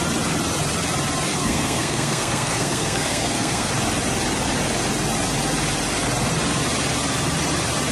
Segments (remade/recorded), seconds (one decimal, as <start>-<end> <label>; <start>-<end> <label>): 0.0-1.3 recorded; 1.3-3.7 remade; 3.7-7.9 recorded